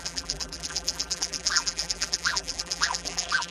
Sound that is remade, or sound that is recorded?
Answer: remade